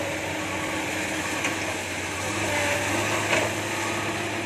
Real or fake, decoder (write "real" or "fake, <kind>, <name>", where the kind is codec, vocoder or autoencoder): real